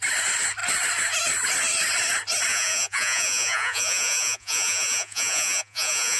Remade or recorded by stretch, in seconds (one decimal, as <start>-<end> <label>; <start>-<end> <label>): 0.0-2.5 recorded; 2.5-6.2 remade